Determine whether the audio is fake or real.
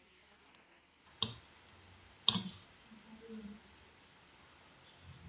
real